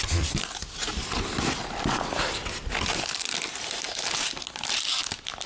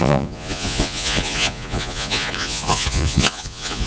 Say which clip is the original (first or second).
first